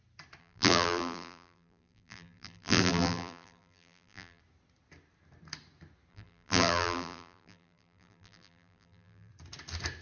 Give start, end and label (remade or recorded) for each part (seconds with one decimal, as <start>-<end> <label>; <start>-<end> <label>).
0.0-0.4 recorded; 0.4-4.4 remade; 4.4-6.1 recorded; 6.1-9.3 remade; 9.3-10.0 recorded